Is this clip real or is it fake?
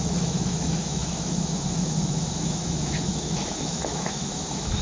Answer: fake